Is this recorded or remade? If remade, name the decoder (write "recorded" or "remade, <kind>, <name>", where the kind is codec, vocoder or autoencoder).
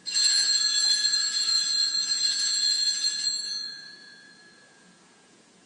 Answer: remade, vocoder, Vocos